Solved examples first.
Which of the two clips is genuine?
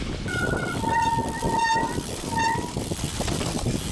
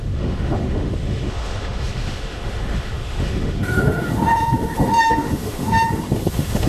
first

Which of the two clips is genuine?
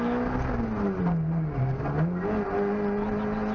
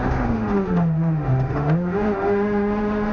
first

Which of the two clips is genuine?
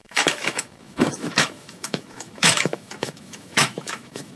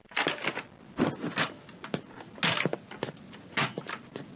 second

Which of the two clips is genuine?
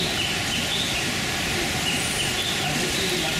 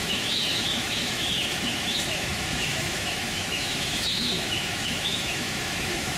first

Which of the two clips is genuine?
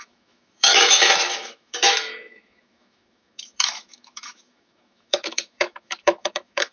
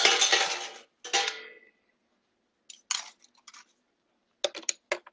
second